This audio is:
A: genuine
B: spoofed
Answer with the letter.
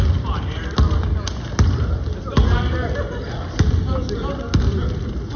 A